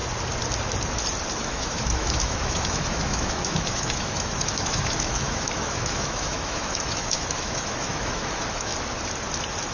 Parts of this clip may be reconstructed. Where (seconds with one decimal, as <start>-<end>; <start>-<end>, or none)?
1.3-8.7